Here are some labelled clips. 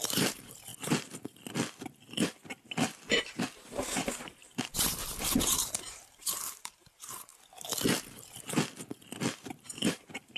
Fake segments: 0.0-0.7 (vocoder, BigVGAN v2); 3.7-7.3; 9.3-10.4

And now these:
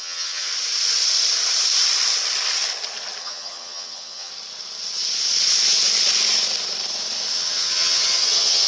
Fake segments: 0.0-0.5 (vocoder, HiFi-GAN); 3.2-4.3; 7.3-8.7

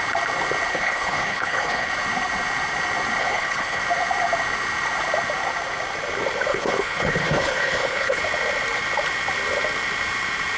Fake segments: 0.7-1.9 (codec, HILCodec); 3.2-3.8; 6.5-8.2

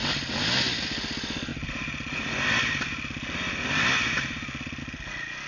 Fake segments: none

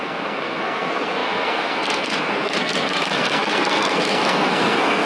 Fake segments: 0.0-5.1 (codec, SNAC)

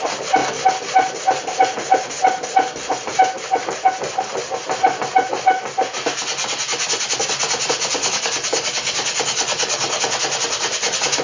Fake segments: 8.0-10.0 (codec, DAC)

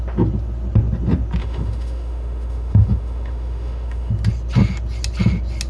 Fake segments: 1.4-4.1 (autoencoder, DAC-VAE)

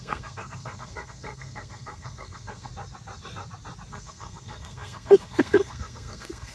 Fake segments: 0.0-2.7 (codec, SNAC); 3.9-6.5